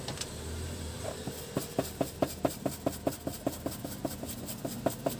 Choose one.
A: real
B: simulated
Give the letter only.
A